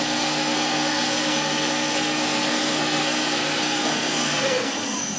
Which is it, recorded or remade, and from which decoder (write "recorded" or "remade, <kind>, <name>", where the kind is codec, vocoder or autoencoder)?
remade, codec, SNAC